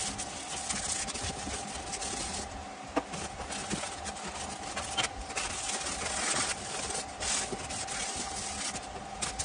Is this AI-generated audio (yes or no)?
no